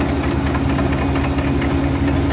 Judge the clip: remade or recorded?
recorded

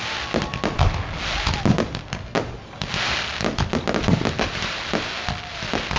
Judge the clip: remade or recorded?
recorded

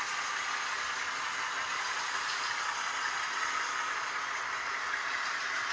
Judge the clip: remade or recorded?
recorded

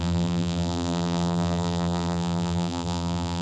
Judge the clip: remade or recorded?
remade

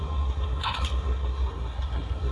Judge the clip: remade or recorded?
remade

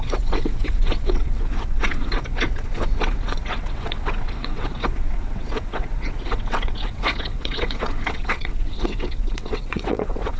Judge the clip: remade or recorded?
remade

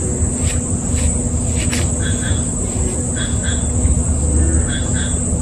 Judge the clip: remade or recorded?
recorded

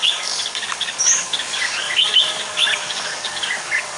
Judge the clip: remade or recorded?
remade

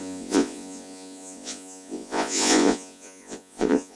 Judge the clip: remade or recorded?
remade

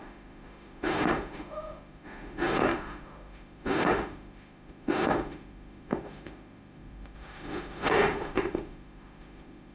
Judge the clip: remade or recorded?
remade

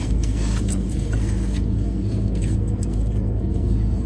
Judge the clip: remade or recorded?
remade